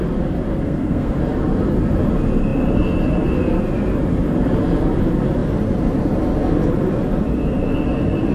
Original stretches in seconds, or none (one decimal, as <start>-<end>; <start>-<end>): 0.0-0.5; 1.2-8.3